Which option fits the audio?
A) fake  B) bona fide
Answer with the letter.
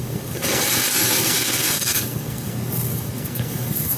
A